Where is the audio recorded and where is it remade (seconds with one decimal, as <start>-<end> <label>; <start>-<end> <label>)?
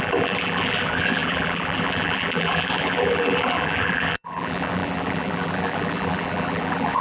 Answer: 0.0-7.0 remade